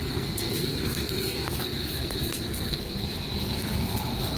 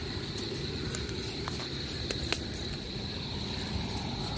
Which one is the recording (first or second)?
second